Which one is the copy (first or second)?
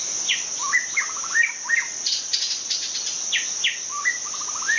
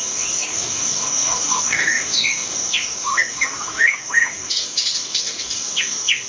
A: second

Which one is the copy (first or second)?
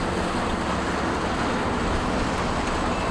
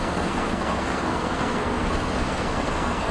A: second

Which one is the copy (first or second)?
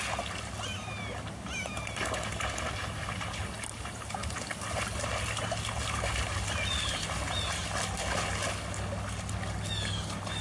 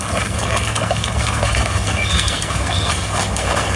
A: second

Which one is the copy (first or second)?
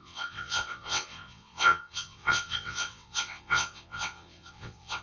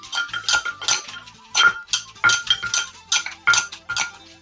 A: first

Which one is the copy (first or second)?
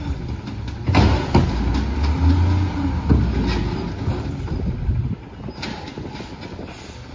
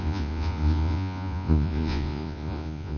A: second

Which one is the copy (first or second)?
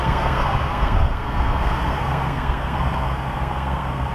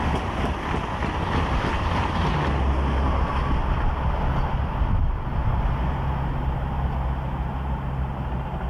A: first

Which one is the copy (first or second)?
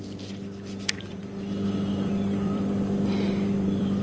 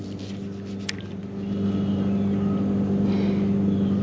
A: first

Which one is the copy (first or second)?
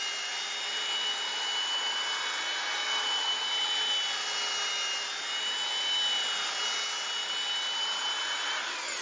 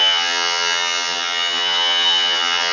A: second